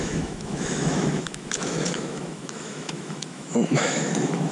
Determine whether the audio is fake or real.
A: fake